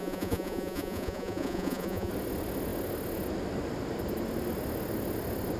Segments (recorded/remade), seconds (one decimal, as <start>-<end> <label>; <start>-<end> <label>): 0.0-2.1 remade; 2.1-5.6 recorded